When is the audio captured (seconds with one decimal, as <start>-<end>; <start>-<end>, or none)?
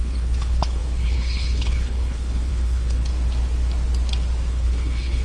3.1-4.5